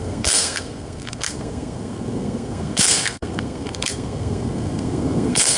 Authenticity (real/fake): fake